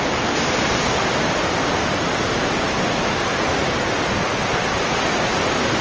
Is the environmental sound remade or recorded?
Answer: recorded